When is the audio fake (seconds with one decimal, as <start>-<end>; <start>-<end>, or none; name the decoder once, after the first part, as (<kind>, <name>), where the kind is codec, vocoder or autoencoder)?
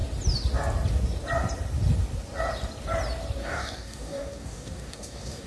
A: 3.4-5.5 (codec, DAC)